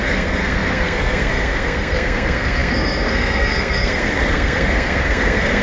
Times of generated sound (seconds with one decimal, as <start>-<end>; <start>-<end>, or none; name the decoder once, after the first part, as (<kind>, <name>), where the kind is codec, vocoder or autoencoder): 0.0-5.6 (codec, SNAC)